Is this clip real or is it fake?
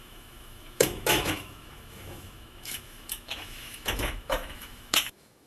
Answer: fake